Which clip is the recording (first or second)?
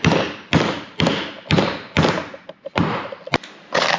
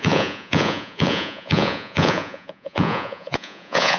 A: first